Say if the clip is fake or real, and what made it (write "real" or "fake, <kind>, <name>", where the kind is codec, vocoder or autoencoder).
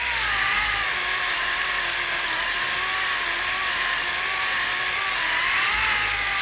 real